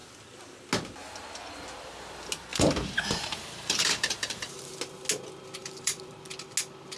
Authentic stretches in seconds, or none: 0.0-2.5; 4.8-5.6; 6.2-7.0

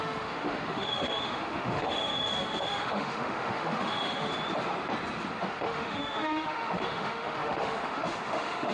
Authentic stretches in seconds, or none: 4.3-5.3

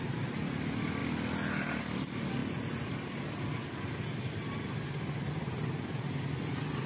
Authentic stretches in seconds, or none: 0.0-6.9

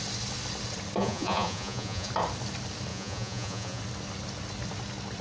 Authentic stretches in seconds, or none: 0.0-1.0; 2.1-2.9; 3.8-5.2

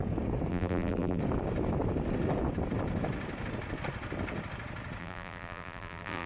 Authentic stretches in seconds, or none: 0.0-0.5; 1.2-5.0